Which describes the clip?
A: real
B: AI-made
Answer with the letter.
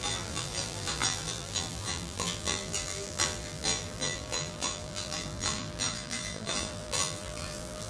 B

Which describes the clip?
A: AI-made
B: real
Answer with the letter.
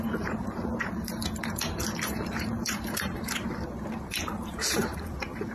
A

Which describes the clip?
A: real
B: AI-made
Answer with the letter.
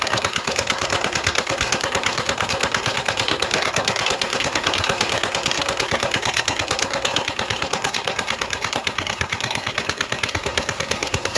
B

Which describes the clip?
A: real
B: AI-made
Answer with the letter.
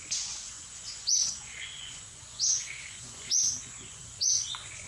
B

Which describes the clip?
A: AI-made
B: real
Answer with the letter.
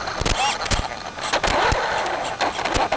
B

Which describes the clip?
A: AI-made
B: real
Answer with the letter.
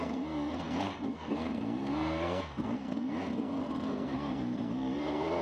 A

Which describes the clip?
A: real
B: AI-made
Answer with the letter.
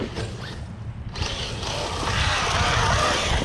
A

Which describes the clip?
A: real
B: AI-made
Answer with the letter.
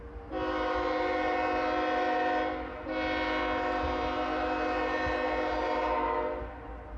A